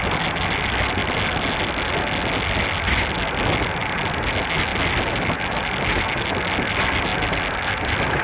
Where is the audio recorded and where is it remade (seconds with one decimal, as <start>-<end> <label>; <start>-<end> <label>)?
0.0-8.2 recorded